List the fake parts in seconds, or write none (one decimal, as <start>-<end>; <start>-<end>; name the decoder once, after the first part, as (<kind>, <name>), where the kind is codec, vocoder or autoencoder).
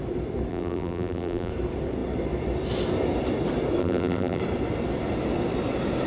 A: 0.5-1.5 (vocoder, BigVGAN v2); 3.8-4.4